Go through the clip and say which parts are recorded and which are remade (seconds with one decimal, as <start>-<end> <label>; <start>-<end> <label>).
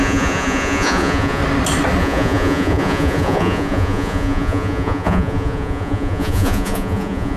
0.0-1.4 remade; 1.4-2.0 recorded; 2.0-7.4 remade